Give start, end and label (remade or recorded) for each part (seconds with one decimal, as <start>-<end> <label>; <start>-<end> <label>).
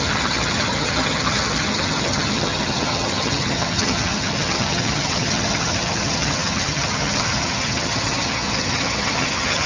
0.0-9.7 remade